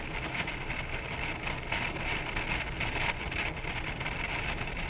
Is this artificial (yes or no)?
no